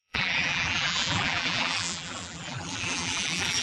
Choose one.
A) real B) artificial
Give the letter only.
B